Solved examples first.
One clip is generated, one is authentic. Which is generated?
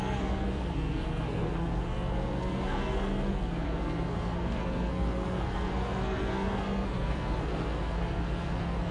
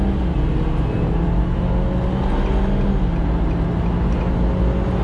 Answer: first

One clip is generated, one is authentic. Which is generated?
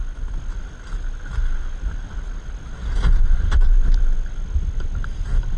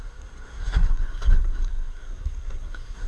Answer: second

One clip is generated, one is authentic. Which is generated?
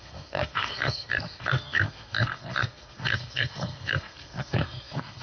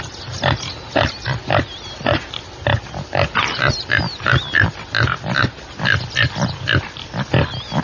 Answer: first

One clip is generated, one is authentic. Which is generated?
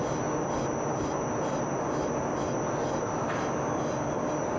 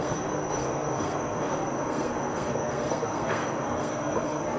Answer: second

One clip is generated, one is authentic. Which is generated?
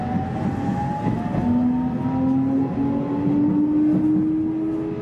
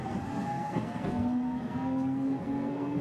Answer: second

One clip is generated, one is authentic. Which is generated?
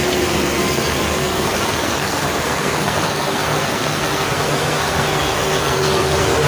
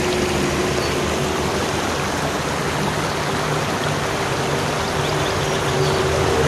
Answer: first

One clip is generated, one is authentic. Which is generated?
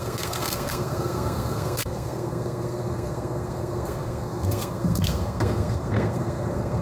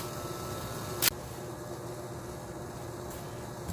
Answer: first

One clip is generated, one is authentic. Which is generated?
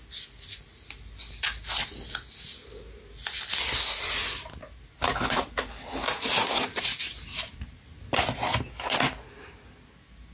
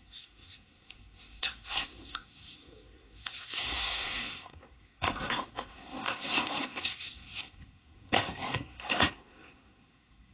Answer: second